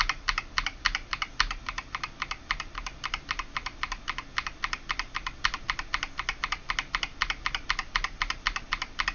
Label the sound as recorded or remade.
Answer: recorded